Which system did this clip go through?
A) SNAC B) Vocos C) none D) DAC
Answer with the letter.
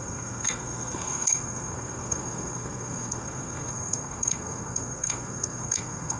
A